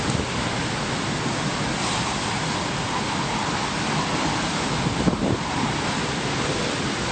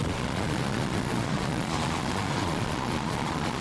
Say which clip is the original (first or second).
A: first